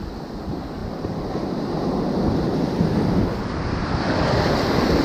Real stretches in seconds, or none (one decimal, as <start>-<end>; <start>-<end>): 0.0-5.0